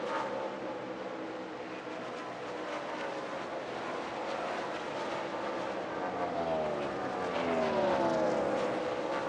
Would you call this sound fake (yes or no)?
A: no